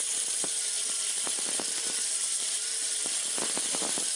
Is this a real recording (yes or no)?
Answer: no